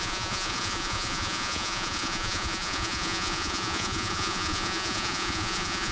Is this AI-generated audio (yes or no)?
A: yes